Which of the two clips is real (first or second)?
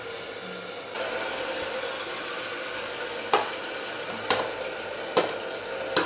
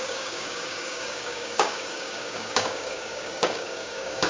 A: first